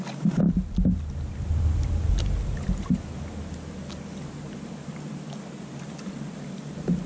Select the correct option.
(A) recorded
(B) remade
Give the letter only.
A